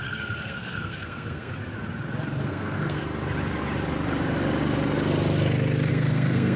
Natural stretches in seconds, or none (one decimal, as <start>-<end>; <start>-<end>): 1.5-2.4; 3.0-5.9